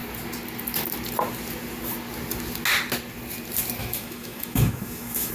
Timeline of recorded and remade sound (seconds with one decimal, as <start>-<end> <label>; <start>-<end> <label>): 0.0-3.8 recorded; 3.8-5.3 remade